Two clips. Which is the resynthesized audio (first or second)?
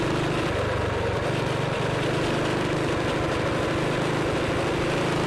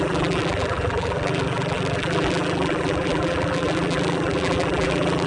second